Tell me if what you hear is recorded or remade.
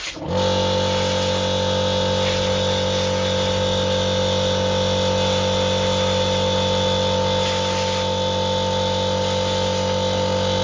recorded